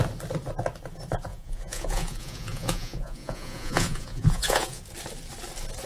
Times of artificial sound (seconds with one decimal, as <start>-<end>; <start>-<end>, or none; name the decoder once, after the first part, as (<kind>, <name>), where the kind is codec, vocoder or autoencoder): 1.3-4.8 (vocoder, Vocos)